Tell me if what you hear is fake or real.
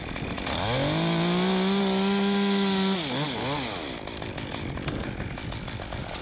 real